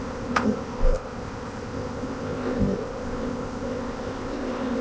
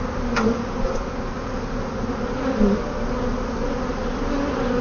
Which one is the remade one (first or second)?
first